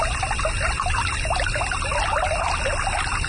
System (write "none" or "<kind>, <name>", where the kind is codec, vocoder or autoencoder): none